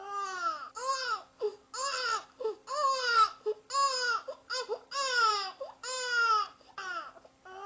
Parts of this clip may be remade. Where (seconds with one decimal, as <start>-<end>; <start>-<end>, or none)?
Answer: none